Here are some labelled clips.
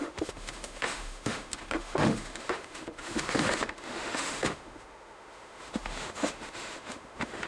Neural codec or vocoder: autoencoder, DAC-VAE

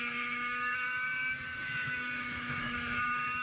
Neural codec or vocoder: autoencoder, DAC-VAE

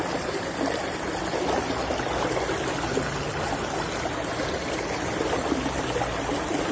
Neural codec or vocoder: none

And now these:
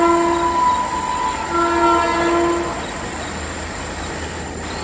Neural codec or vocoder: none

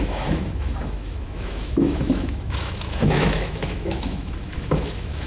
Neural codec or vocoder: autoencoder, DAC-VAE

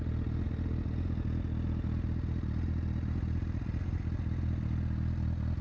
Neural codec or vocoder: none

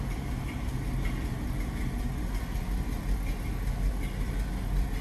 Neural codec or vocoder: none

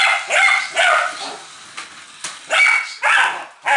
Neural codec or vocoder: none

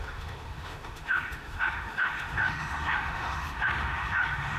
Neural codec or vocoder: autoencoder, DAC-VAE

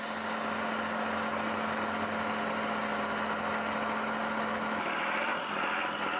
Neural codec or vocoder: none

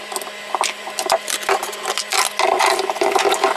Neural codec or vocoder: none